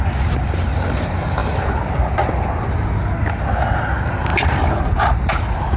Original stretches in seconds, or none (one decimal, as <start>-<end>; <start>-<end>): 0.0-5.8